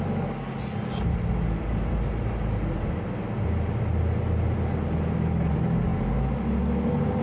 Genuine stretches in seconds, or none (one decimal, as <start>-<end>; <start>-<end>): 0.0-7.2